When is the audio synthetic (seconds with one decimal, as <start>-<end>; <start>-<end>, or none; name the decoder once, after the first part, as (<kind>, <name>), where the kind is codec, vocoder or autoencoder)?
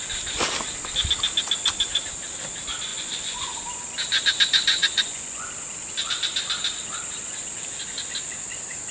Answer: 2.9-3.5 (vocoder, Vocos); 4.8-5.5